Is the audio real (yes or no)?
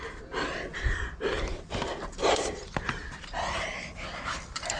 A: yes